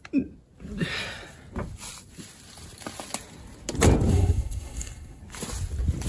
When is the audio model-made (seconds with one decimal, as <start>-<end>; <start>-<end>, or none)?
4.1-5.2